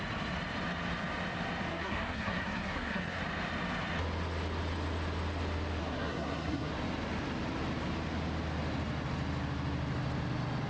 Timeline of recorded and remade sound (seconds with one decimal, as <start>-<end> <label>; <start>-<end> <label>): 0.0-1.7 recorded; 1.7-3.2 remade; 3.2-5.8 recorded; 5.8-6.7 remade; 6.7-10.7 recorded